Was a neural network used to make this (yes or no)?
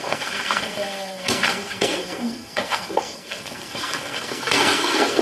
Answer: yes